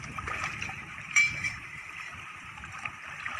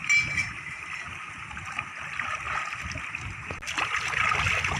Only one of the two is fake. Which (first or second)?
first